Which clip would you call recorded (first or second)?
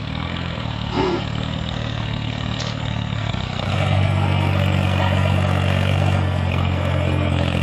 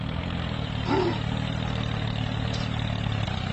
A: second